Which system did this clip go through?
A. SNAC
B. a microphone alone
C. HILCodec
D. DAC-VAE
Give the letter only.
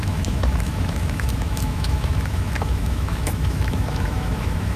D